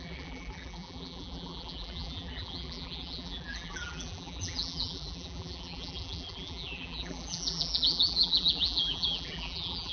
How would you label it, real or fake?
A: fake